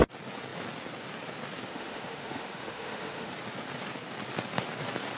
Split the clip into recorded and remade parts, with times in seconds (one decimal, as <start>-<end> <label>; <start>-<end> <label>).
0.0-1.7 recorded; 1.7-3.3 remade; 3.3-5.2 recorded